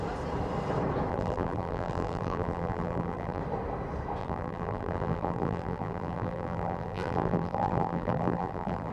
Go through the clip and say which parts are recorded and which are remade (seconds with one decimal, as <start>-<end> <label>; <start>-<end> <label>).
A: 0.0-1.1 recorded; 1.1-3.4 remade; 3.4-4.2 recorded; 4.2-8.9 remade